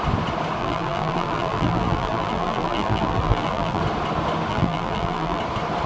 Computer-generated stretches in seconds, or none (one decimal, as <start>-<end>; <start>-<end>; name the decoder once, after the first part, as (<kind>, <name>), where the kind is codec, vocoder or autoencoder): 0.6-3.8 (vocoder, BigVGAN v2); 4.5-5.4

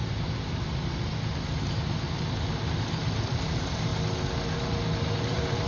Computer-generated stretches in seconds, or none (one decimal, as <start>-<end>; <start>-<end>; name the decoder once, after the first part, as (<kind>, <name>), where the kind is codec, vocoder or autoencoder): 3.4-3.9 (vocoder, BigVGAN v2); 5.2-5.7

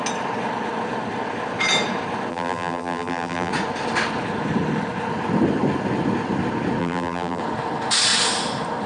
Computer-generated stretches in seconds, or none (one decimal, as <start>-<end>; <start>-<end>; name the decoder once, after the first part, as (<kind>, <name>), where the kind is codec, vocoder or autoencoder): 2.3-3.5 (vocoder, BigVGAN v2); 6.8-7.4

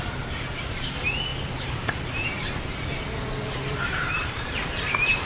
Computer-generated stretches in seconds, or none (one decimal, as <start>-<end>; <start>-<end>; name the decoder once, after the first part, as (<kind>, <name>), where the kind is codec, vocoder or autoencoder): 0.0-5.3 (vocoder, BigVGAN v2)

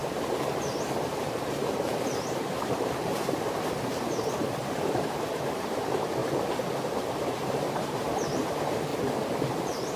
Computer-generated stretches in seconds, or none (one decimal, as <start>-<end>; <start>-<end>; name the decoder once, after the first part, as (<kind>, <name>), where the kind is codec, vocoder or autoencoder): 0.0-6.2 (vocoder, BigVGAN v2); 7.3-8.9; 9.6-10.0

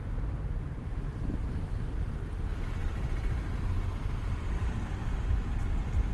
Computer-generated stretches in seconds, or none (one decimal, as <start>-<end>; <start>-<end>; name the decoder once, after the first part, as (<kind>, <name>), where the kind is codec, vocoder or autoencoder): 0.8-2.1 (vocoder, BigVGAN v2)

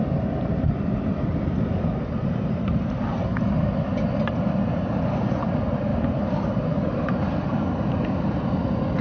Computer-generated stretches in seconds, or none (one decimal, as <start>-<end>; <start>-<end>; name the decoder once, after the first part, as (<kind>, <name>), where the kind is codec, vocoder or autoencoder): 5.9-7.2 (vocoder, BigVGAN v2)

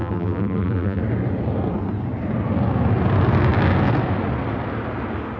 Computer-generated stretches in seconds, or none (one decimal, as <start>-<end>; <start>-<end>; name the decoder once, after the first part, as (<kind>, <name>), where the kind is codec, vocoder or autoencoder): 0.0-1.0 (vocoder, BigVGAN v2)